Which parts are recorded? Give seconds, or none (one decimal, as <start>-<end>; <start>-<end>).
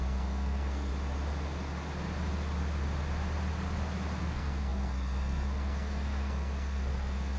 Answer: 0.9-4.2